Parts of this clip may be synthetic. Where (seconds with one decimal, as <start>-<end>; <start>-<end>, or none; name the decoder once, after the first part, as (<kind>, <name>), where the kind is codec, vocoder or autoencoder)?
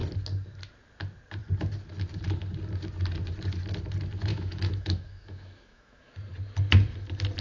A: 4.3-6.1 (autoencoder, DAC-VAE)